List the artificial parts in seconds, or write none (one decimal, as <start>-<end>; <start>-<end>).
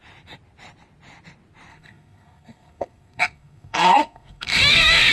1.7-5.1